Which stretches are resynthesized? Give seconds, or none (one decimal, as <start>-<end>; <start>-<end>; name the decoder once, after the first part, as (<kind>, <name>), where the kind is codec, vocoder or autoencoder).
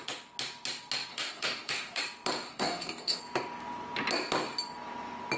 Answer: 1.1-2.0 (codec, DAC); 2.5-3.2